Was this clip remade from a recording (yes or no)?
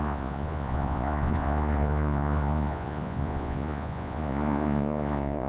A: yes